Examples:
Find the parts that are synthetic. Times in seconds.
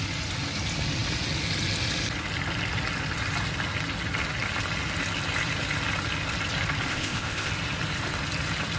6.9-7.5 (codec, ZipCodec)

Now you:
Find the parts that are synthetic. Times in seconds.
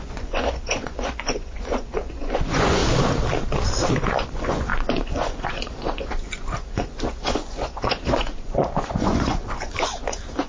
0.0-2.8 (vocoder, Vocos); 3.9-10.5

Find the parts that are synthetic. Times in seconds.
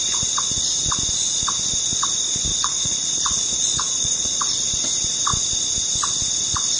2.5-4.4 (vocoder, Vocos)